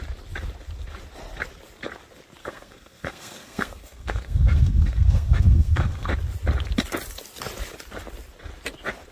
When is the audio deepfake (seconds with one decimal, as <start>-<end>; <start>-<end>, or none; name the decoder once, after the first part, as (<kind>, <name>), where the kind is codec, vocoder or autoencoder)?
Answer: 2.4-6.1 (codec, SNAC)